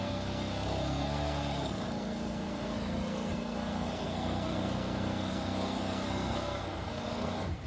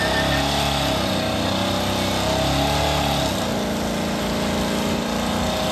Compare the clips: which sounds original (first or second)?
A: second